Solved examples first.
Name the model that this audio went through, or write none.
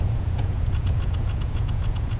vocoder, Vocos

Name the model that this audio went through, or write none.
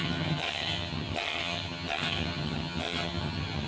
vocoder, HiFi-GAN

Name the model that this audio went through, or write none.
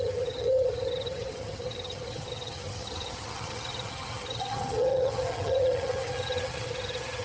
vocoder, HiFi-GAN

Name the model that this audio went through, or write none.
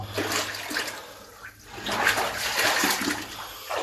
none